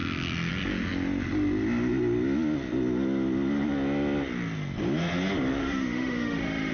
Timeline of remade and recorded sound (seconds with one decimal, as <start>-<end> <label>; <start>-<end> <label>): 0.0-5.6 recorded; 5.6-6.7 remade